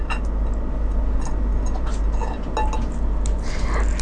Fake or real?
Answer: real